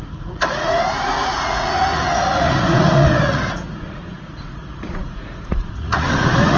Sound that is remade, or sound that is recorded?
remade